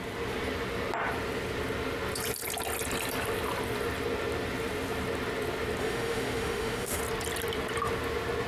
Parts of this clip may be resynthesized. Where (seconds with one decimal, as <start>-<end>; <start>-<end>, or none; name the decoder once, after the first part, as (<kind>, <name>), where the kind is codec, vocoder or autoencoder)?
5.8-7.0 (autoencoder, DAC-VAE)